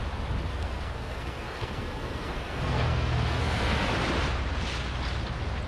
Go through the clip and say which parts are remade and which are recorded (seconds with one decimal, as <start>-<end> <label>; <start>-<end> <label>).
0.0-0.5 recorded; 0.5-3.9 remade; 3.9-5.7 recorded